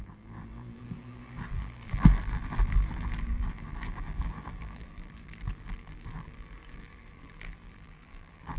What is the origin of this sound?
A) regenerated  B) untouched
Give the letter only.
A